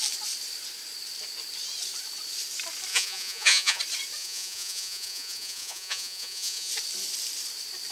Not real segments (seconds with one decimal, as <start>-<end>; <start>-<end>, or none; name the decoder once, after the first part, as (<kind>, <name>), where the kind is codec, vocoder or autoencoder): 2.9-3.8 (vocoder, Vocos); 4.2-6.7